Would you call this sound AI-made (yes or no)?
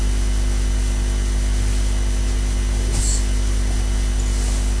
no